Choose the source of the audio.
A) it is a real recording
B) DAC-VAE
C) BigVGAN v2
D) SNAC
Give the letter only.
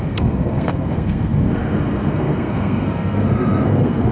D